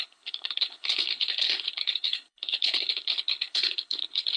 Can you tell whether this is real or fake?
fake